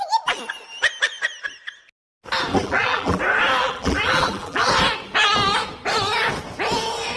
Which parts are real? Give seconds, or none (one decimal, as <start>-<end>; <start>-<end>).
0.0-2.5; 3.2-3.6; 4.7-7.2